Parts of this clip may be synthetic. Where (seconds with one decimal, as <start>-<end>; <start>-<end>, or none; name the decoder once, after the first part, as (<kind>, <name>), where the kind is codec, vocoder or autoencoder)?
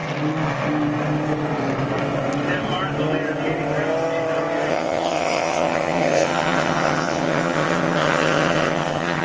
4.7-9.2 (vocoder, HiFi-GAN)